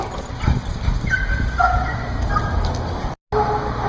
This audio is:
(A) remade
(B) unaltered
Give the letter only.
B